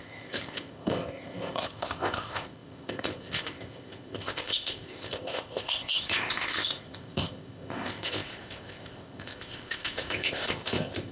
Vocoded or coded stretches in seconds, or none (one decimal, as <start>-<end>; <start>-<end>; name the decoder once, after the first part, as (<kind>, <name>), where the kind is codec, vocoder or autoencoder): 0.0-11.1 (codec, ZipCodec)